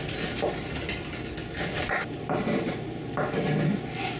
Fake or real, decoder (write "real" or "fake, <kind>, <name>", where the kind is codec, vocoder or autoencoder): real